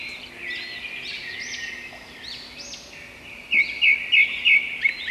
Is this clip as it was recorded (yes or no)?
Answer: yes